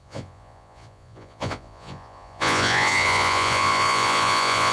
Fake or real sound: fake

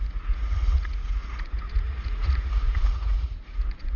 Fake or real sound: fake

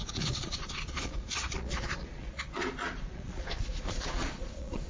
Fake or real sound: fake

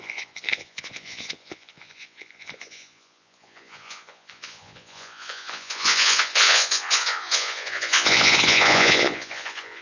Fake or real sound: fake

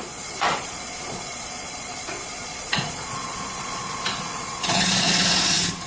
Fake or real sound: fake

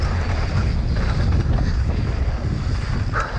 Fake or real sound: real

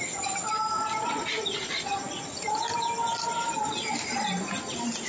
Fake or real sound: real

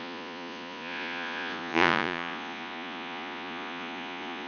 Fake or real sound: fake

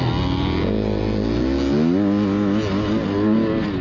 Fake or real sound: real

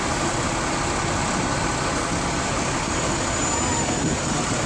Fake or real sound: real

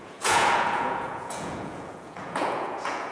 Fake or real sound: fake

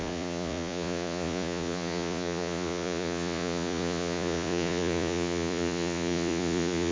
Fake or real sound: fake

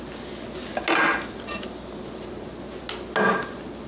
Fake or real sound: real